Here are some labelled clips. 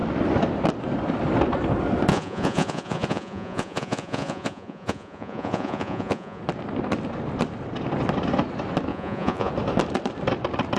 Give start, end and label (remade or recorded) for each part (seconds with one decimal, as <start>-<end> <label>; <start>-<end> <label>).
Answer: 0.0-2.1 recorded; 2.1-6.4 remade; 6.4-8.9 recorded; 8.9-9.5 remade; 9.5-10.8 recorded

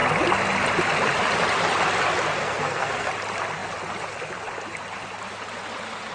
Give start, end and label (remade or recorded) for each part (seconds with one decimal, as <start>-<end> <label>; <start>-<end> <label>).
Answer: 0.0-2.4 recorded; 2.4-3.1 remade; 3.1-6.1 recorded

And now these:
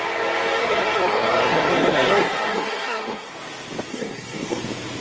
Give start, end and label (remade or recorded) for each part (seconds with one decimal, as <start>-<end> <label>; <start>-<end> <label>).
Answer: 0.0-0.6 recorded; 0.6-3.3 remade; 3.3-3.9 recorded; 3.9-4.6 remade; 4.6-5.0 recorded

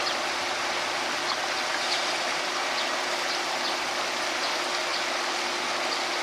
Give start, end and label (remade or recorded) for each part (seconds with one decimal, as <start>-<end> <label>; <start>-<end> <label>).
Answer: 0.0-6.2 recorded